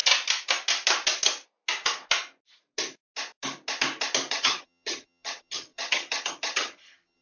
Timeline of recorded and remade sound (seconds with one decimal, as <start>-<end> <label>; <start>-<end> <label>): 0.0-4.3 recorded; 4.3-7.2 remade